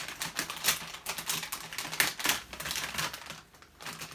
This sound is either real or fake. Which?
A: real